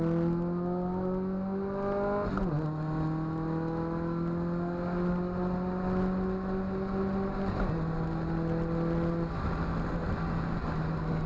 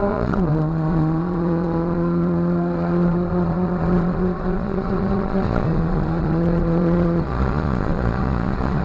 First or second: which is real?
first